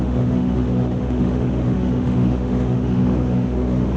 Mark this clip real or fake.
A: fake